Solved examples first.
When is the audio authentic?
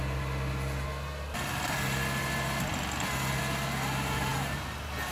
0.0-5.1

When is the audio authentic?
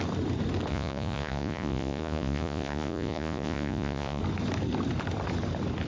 0.0-0.7; 4.2-5.9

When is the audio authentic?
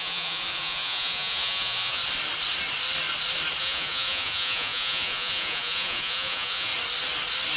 2.0-3.6; 6.7-7.6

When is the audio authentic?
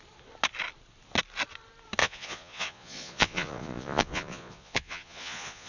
0.0-2.0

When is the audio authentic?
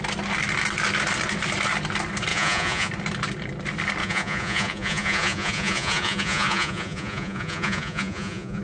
0.0-2.3; 2.9-4.0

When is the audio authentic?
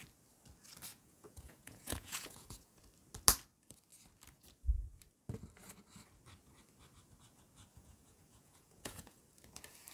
0.0-0.9; 2.8-7.7; 9.2-9.9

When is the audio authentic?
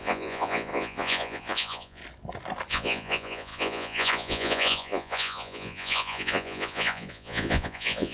2.0-2.7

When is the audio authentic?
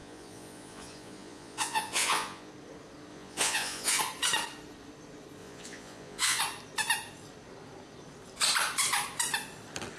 2.5-3.1; 4.0-5.4; 6.4-10.0